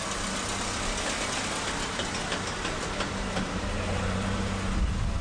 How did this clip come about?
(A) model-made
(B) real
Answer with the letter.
B